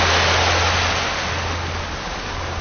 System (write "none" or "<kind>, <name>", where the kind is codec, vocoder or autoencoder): none